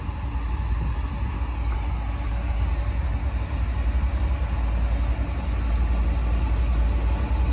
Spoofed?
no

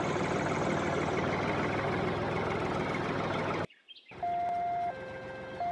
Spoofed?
no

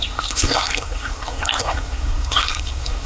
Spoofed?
yes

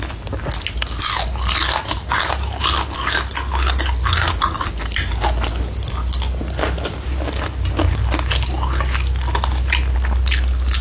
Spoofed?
no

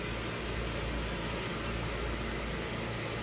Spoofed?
no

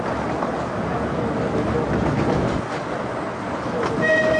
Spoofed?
no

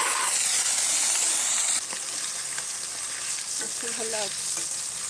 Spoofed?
no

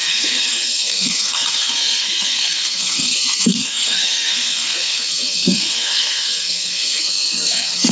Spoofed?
yes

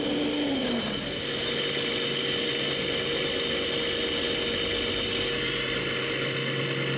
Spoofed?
no